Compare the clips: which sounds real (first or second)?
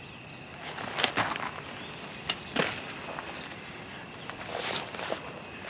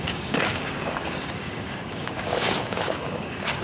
first